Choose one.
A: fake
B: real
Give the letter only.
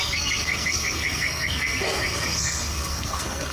A